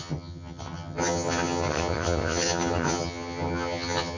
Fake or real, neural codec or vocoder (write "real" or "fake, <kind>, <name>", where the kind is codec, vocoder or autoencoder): fake, vocoder, HiFi-GAN